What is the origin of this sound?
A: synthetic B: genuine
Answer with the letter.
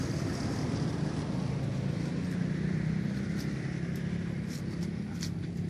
B